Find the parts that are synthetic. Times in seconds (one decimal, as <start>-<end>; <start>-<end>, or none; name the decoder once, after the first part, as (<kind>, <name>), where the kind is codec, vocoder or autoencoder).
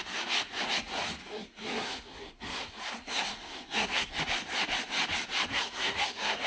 1.2-4.2 (codec, SNAC); 5.5-6.5